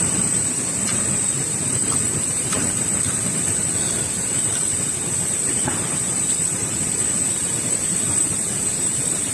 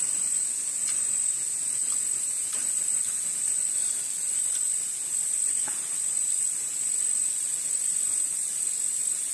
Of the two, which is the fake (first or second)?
first